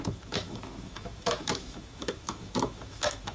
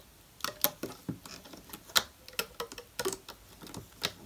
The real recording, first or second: second